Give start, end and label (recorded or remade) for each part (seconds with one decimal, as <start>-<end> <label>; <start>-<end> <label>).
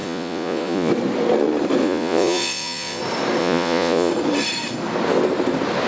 0.0-0.9 remade; 0.9-1.8 recorded; 1.8-3.0 remade; 3.0-3.4 recorded; 3.4-4.1 remade; 4.1-5.9 recorded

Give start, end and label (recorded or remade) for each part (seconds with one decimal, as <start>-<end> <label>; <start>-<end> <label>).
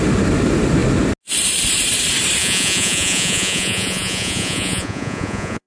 0.0-2.4 recorded; 2.4-5.7 remade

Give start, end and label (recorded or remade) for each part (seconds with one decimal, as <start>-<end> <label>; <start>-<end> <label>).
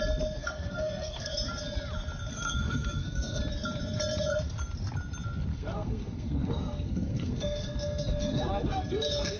0.0-0.4 recorded; 0.4-1.3 remade; 1.3-2.3 recorded; 2.3-3.4 remade; 3.4-5.5 recorded; 5.5-9.4 remade